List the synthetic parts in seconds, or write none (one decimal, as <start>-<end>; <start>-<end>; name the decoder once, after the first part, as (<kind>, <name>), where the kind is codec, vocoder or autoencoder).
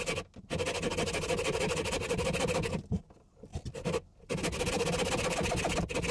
none